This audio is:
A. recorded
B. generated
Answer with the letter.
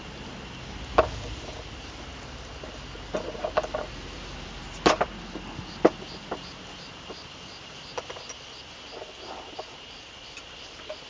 A